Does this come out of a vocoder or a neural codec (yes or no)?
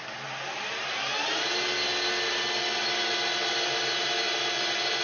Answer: no